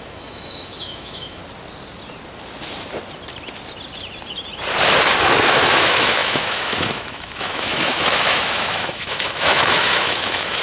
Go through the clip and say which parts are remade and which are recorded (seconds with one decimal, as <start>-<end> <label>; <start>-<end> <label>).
0.0-1.4 remade; 1.4-5.2 recorded; 5.2-10.6 remade